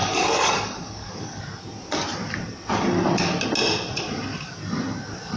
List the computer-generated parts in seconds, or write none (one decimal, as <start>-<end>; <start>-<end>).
0.0-1.4